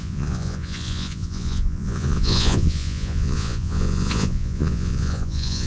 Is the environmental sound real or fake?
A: fake